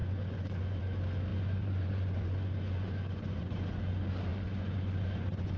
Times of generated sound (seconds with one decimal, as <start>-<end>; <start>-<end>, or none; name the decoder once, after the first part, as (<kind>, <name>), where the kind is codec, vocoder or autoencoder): 0.0-0.8 (vocoder, Vocos); 1.3-3.8; 4.3-5.6